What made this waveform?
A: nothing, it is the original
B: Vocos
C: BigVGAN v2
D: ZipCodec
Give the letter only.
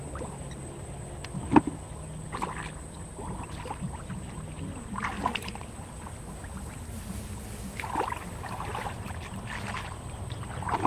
A